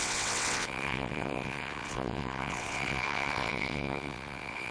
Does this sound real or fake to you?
fake